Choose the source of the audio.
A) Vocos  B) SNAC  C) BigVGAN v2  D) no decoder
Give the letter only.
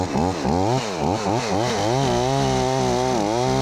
D